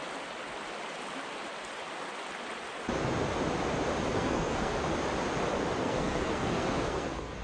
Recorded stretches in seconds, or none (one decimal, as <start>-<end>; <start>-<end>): 0.0-4.1; 4.8-5.8